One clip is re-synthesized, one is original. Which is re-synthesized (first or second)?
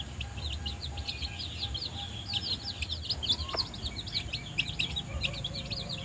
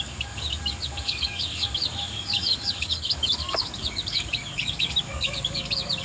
second